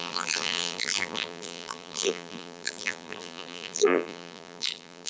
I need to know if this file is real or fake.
fake